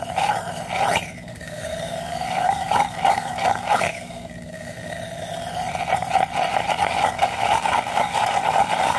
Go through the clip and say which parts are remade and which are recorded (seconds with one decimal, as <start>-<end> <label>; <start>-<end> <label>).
0.0-1.3 recorded; 1.3-5.0 remade; 5.0-6.5 recorded; 6.5-9.0 remade